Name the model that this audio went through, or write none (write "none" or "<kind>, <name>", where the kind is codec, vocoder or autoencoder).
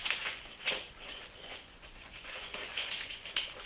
vocoder, Vocos